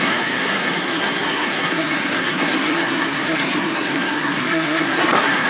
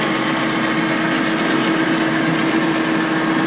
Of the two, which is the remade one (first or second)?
first